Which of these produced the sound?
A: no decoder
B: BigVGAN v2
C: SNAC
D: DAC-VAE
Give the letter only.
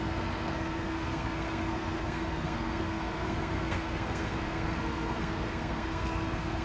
C